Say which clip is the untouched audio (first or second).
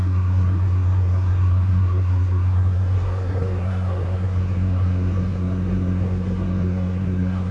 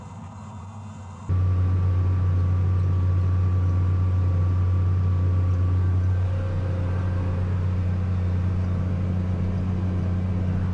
second